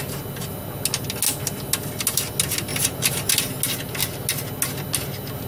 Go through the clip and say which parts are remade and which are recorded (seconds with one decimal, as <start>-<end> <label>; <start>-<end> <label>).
0.0-2.7 recorded; 2.7-3.3 remade; 3.3-5.5 recorded